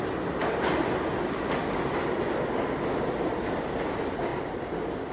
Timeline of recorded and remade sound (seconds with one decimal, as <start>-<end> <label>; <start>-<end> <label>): 0.0-5.1 recorded